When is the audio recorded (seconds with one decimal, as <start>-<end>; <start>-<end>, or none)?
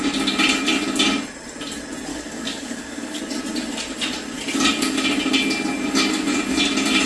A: 0.0-2.1; 3.2-7.1